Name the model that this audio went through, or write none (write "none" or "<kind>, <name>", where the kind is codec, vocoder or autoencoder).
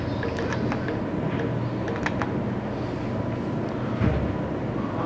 none